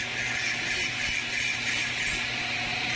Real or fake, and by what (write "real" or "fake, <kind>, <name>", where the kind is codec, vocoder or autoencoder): real